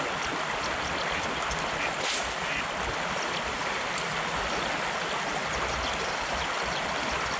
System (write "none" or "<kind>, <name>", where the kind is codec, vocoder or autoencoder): none